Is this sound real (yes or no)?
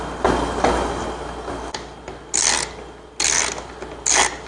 yes